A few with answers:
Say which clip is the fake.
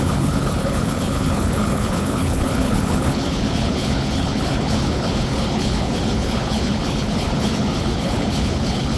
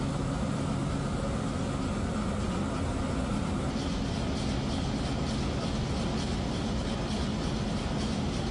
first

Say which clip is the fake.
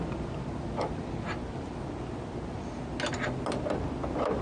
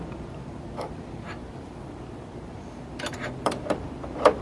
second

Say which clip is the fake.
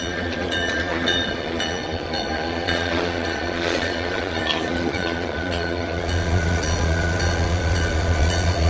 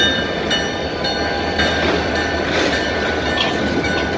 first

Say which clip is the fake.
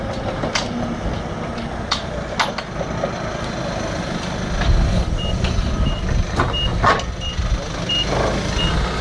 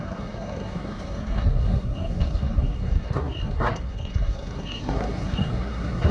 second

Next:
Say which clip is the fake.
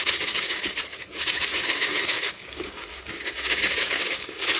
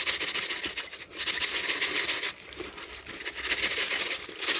first